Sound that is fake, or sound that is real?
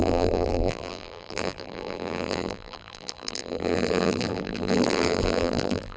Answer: fake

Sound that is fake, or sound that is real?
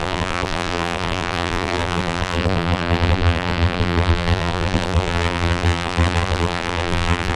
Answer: fake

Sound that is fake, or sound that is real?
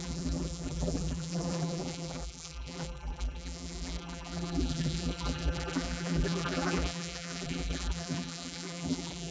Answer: fake